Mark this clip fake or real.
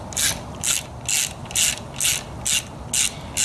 real